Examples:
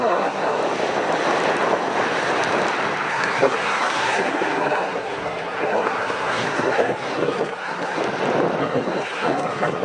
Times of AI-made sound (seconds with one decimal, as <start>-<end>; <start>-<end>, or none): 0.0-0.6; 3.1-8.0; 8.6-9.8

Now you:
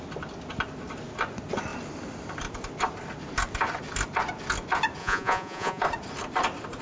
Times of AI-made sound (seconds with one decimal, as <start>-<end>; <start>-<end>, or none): 5.0-5.8

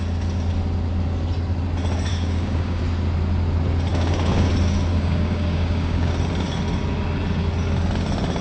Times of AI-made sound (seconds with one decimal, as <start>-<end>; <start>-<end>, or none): 2.1-2.8; 3.9-4.5; 4.9-6.1

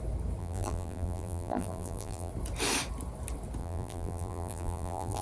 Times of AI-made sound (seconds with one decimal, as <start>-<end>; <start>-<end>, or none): 0.4-2.3; 3.6-5.2